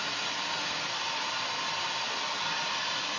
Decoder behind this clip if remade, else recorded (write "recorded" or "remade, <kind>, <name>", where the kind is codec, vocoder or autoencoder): recorded